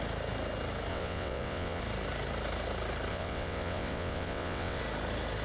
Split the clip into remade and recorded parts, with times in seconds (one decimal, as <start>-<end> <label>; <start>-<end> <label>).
0.0-0.9 recorded; 0.9-1.8 remade; 1.8-3.1 recorded; 3.1-4.8 remade; 4.8-5.4 recorded